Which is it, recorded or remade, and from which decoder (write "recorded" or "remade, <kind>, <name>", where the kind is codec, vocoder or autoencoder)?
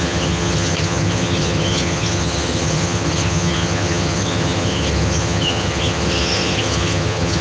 remade, vocoder, HiFi-GAN